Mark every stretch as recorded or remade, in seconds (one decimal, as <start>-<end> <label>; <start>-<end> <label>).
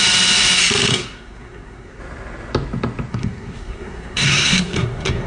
0.0-0.9 recorded; 0.9-2.0 remade; 2.0-3.1 recorded; 3.1-5.3 remade